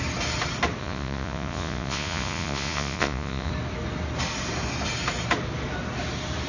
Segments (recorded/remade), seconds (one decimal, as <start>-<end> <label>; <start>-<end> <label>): 0.0-0.8 recorded; 0.8-3.5 remade; 3.5-6.5 recorded